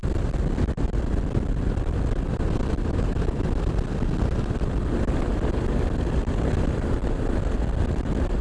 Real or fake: real